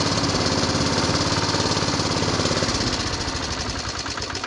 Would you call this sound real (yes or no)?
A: yes